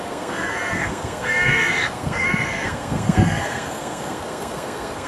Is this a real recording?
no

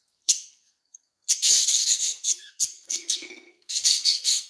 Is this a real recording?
no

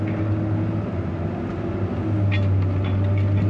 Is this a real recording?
yes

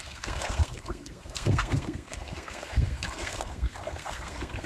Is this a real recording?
no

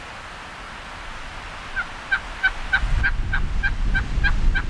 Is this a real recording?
yes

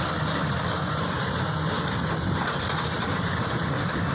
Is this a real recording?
yes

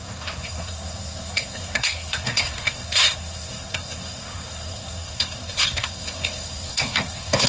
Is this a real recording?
no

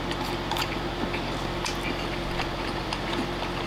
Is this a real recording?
yes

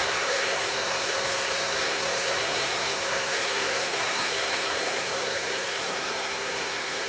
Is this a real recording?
no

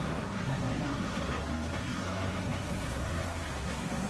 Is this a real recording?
no